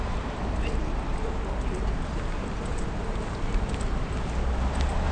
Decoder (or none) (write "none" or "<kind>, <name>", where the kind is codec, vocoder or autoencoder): none